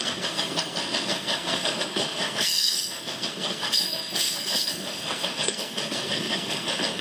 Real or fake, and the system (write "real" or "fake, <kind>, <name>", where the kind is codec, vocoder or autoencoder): fake, codec, SNAC